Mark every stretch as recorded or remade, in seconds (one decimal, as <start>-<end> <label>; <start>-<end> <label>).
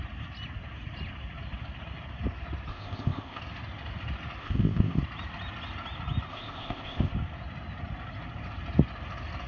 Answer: 0.0-2.7 recorded; 2.7-3.4 remade; 3.4-4.4 recorded; 4.4-5.0 remade; 5.0-6.3 recorded; 6.3-7.1 remade; 7.1-9.5 recorded